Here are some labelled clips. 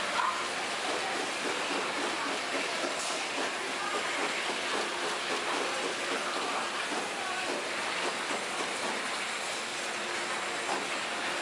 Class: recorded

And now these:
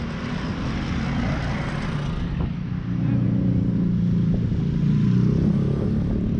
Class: recorded